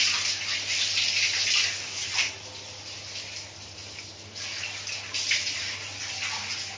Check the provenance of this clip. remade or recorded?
recorded